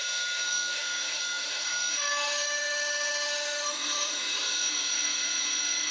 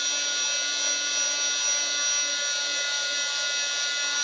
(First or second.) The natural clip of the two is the second